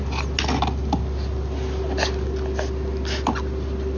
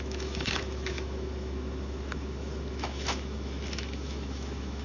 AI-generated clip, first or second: second